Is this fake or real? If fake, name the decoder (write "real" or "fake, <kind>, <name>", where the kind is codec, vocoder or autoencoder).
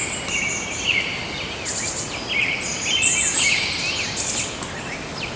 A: real